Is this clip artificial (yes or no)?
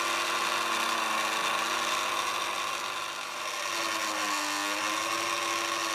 no